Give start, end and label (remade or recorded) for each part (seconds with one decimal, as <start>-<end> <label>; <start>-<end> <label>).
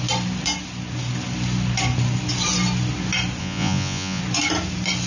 0.0-3.4 recorded; 3.4-4.2 remade; 4.2-5.1 recorded